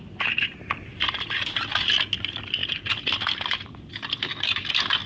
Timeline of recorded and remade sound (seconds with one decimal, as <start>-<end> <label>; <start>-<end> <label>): 0.0-5.1 recorded